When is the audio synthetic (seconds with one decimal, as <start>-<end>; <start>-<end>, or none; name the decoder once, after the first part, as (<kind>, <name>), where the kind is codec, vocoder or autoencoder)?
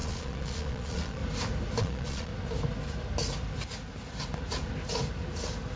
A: 0.0-1.2 (vocoder, Vocos); 1.8-2.3